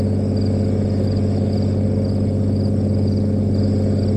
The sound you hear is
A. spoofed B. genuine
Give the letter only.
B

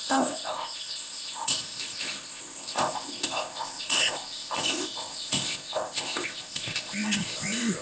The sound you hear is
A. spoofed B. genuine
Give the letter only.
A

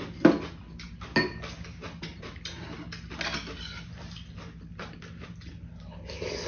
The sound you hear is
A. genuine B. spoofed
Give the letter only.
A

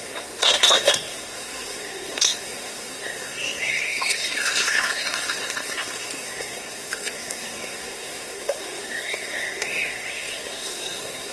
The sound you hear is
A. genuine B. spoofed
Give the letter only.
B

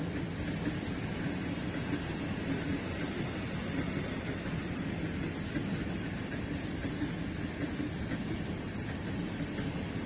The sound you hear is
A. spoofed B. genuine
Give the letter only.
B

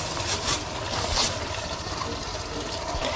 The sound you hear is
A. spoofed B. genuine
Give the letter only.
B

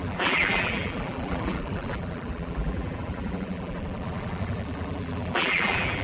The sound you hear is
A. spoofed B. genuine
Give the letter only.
A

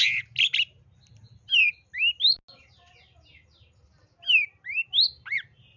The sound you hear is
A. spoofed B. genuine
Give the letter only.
B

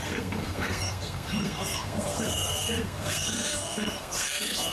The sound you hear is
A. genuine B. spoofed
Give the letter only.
B